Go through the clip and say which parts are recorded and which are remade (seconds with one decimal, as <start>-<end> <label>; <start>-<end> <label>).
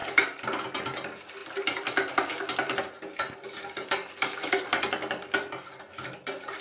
0.0-0.8 remade; 0.8-6.6 recorded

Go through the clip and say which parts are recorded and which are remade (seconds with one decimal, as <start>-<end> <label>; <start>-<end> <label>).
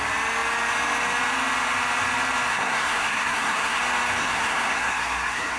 0.0-2.5 recorded; 2.5-3.8 remade; 3.8-4.2 recorded; 4.2-5.6 remade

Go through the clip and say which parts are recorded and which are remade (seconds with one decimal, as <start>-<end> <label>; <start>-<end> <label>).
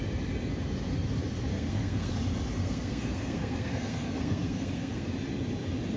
0.0-1.5 recorded; 1.5-2.1 remade; 2.1-2.6 recorded; 2.6-5.1 remade; 5.1-6.0 recorded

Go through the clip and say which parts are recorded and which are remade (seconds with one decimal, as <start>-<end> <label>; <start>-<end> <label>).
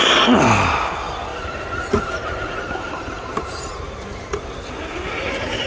0.0-5.7 recorded